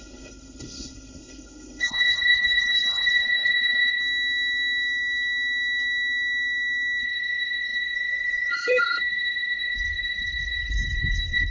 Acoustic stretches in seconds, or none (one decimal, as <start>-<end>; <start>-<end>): 4.0-7.0